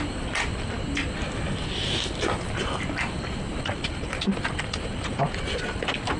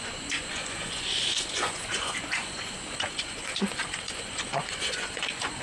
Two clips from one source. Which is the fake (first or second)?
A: second